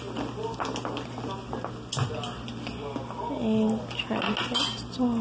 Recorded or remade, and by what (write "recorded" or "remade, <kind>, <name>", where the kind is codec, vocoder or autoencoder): recorded